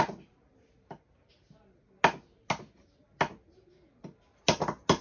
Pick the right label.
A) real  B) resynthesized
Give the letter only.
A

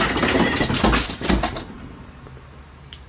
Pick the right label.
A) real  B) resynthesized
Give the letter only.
A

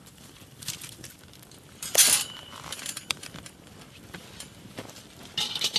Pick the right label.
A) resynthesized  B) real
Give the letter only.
A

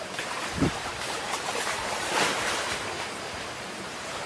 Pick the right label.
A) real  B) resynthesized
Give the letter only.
B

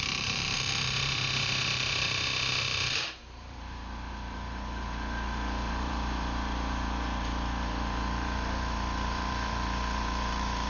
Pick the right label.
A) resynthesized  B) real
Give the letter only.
A